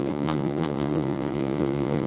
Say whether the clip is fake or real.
fake